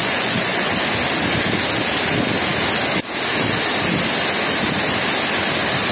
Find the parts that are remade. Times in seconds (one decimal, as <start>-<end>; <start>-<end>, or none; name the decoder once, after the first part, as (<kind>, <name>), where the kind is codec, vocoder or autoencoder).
0.0-0.7 (vocoder, Vocos)